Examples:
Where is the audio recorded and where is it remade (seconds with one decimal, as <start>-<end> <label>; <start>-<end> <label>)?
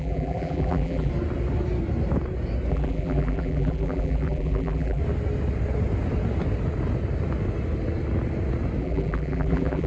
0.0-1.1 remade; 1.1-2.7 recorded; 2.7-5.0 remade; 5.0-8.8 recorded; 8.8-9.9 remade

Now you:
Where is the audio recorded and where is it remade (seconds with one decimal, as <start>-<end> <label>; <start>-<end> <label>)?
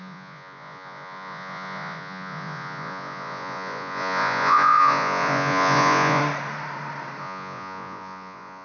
0.0-6.2 remade; 6.2-7.2 recorded; 7.2-8.6 remade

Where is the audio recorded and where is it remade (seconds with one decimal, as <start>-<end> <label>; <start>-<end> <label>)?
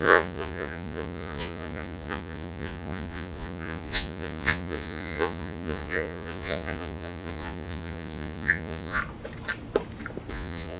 0.0-9.0 remade; 9.0-10.3 recorded; 10.3-10.8 remade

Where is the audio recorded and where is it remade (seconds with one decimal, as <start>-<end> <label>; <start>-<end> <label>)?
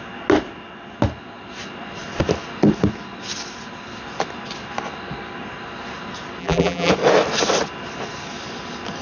0.0-6.4 recorded; 6.4-6.9 remade; 6.9-9.0 recorded